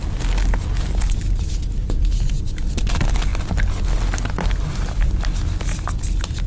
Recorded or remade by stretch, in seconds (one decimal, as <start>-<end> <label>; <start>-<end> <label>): 0.0-1.8 recorded; 1.8-2.7 remade; 2.7-6.5 recorded